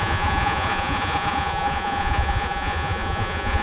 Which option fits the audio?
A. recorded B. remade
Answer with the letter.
B